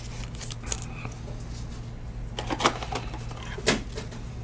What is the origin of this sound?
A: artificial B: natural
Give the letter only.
B